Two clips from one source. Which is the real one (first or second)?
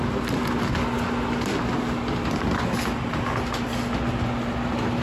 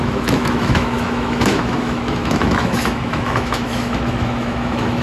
first